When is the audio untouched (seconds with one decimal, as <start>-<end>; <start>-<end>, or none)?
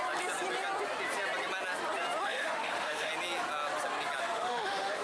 0.0-2.2; 3.1-4.2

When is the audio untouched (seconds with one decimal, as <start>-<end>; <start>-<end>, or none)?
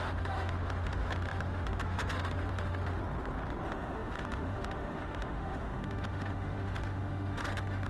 3.0-3.6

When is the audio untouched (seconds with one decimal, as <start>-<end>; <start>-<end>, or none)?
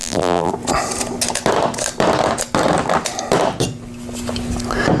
0.5-5.0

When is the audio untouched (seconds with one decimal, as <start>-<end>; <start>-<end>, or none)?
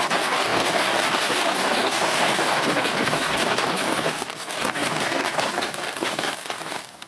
none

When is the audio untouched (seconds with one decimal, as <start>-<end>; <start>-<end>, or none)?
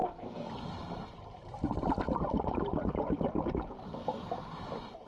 0.5-5.1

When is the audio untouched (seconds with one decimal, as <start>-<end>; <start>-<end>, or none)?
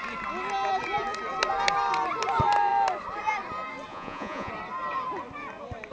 0.0-3.9; 4.5-5.9